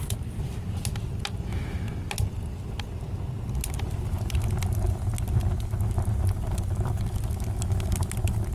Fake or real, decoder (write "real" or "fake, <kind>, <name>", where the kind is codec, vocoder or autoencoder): real